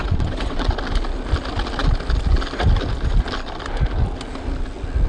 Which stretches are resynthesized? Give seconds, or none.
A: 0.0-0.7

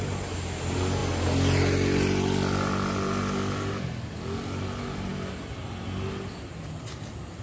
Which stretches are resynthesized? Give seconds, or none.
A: none

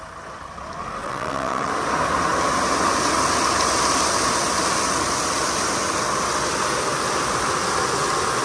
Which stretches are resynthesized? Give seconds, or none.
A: 1.0-1.7

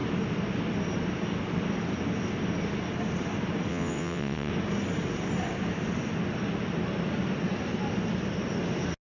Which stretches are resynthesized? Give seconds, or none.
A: 3.7-4.5

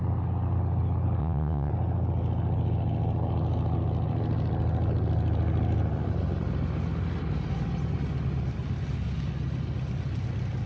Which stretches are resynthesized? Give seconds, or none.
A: 1.2-1.7

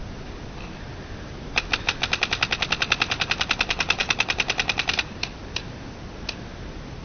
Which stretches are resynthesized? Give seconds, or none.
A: none

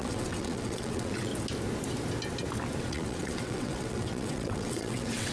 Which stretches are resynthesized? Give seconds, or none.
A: 0.0-1.3; 2.8-5.3